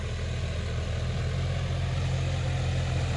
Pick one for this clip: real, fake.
real